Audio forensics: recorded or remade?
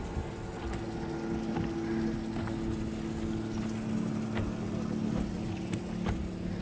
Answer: recorded